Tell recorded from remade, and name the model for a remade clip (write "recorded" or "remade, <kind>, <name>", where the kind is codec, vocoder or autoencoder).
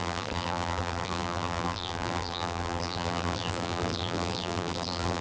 remade, vocoder, BigVGAN v2